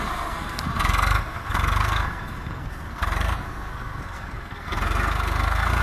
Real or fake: fake